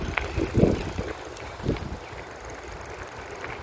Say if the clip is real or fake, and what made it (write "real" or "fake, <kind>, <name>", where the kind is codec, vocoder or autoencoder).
real